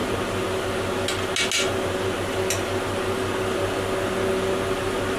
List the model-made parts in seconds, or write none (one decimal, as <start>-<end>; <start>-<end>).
none